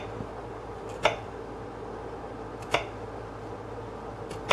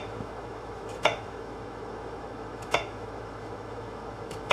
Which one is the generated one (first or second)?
second